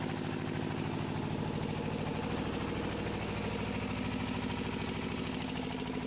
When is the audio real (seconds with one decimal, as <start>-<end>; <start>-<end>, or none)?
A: 0.0-6.1